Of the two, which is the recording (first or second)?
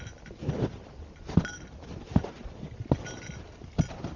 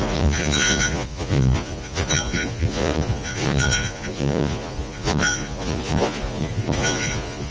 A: first